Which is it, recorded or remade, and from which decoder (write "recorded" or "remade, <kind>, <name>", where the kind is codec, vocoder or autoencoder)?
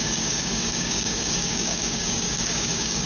remade, codec, DAC